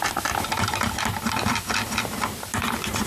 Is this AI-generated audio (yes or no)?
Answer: yes